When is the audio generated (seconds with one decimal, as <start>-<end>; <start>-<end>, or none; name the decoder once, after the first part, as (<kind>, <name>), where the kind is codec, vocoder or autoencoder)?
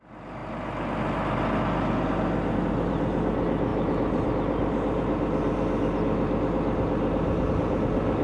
none